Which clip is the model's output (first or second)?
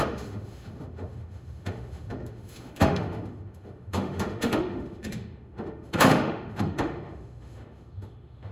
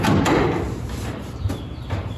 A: first